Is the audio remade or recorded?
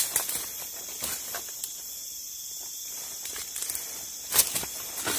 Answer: recorded